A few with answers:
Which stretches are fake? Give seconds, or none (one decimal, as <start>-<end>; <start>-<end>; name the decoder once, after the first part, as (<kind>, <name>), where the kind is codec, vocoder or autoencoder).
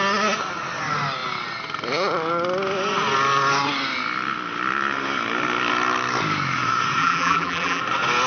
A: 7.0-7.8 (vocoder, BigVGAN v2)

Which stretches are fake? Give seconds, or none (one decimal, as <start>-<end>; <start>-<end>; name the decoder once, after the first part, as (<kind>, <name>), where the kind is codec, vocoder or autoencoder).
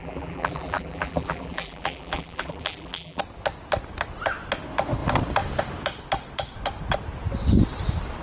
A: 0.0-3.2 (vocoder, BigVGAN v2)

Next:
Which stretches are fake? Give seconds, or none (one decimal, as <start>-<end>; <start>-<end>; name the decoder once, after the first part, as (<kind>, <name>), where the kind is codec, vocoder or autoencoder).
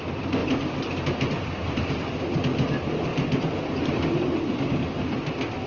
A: 0.4-1.9 (vocoder, BigVGAN v2); 3.1-4.7